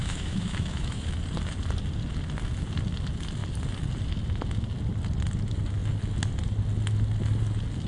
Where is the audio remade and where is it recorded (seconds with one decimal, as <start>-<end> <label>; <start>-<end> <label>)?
0.0-1.1 remade; 1.1-7.9 recorded